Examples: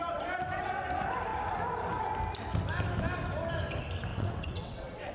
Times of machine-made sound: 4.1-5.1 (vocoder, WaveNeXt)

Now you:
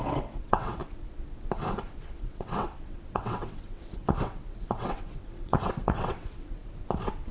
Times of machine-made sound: 0.0-0.8 (vocoder, WaveNeXt); 2.2-6.6

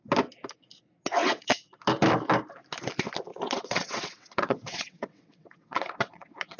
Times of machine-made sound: 1.2-1.8 (vocoder, WaveNeXt); 3.3-6.6

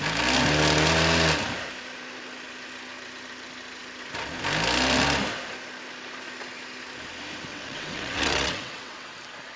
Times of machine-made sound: 7.5-9.1 (vocoder, WaveNeXt)

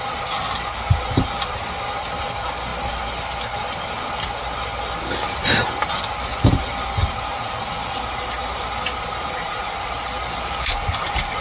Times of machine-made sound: none